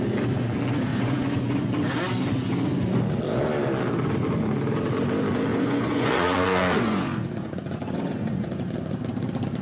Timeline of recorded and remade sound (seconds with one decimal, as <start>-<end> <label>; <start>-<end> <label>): 0.0-0.9 recorded; 0.9-1.7 remade; 1.7-5.5 recorded; 5.5-8.7 remade; 8.7-9.6 recorded